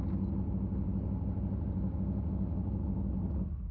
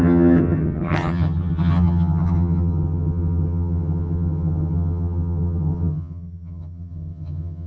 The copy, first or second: second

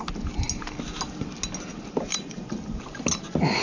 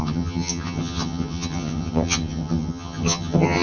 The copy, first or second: second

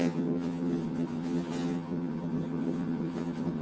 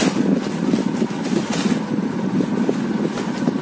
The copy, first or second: first